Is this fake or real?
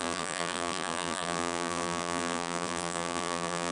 fake